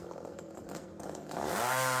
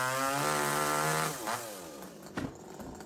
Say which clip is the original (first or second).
second